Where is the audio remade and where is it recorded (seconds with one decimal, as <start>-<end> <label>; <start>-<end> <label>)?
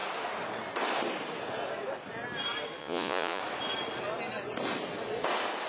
0.0-2.8 recorded; 2.8-3.4 remade; 3.4-5.7 recorded